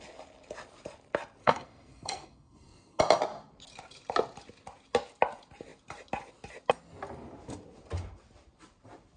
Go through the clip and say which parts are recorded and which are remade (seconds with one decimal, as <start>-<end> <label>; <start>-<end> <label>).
0.0-1.4 recorded; 1.4-3.0 remade; 3.0-9.2 recorded